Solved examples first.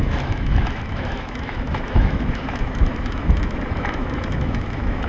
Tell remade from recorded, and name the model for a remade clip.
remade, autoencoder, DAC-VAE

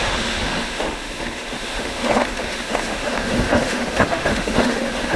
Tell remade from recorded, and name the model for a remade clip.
remade, autoencoder, DAC-VAE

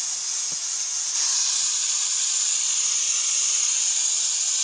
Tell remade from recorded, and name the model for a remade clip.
recorded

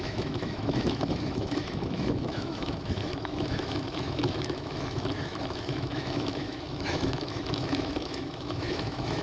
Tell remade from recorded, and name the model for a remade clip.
remade, autoencoder, DAC-VAE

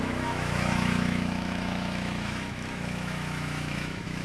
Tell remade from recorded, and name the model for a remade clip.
remade, autoencoder, DAC-VAE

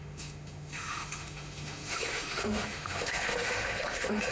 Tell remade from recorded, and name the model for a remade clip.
remade, autoencoder, DAC-VAE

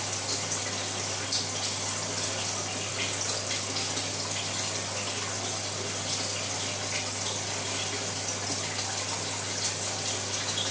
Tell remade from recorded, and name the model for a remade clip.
recorded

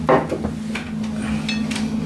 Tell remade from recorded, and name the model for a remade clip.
recorded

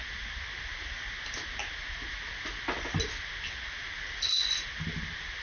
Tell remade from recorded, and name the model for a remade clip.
recorded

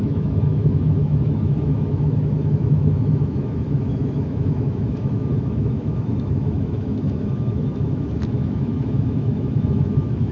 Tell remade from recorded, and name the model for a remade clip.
remade, autoencoder, DAC-VAE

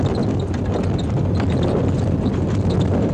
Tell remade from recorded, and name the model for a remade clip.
recorded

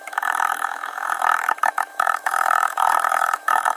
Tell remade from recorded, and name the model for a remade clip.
remade, autoencoder, DAC-VAE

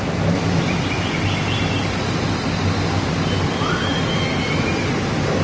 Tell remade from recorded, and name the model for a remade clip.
recorded